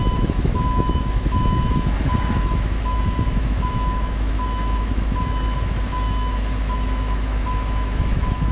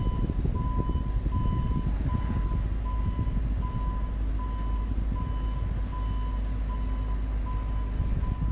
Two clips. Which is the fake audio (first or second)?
first